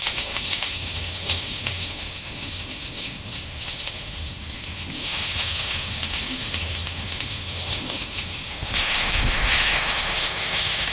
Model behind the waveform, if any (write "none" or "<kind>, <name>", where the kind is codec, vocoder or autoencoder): autoencoder, DAC-VAE